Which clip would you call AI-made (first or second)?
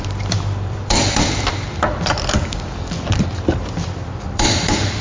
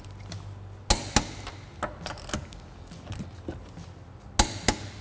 first